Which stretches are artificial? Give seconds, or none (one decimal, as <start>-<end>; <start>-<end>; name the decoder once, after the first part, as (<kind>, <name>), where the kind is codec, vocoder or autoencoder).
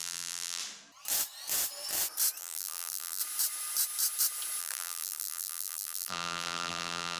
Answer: 0.0-0.6 (vocoder, BigVGAN v2); 2.4-3.2; 4.6-7.2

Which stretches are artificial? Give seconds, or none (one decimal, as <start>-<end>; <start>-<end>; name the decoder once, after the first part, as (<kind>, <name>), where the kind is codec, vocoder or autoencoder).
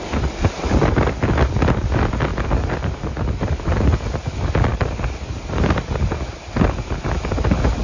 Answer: none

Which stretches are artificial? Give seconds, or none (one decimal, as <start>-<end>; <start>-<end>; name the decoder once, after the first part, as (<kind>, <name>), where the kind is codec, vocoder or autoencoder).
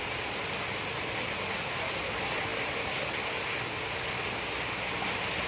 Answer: none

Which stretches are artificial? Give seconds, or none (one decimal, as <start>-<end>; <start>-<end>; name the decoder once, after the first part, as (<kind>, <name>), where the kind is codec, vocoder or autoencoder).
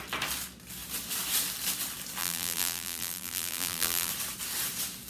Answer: 2.2-4.1 (vocoder, BigVGAN v2)